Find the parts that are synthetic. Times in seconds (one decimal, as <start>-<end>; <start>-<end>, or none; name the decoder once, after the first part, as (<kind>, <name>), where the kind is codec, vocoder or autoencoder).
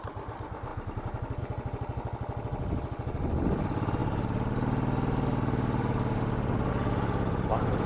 none